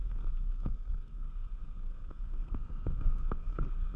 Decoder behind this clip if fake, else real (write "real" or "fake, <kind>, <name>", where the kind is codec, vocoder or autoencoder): fake, codec, SNAC